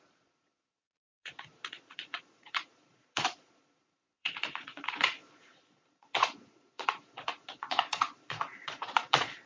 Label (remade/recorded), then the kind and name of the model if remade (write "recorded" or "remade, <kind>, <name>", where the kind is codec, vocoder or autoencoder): remade, vocoder, Vocos